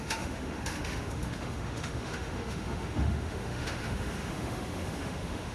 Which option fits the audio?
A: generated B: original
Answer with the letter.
A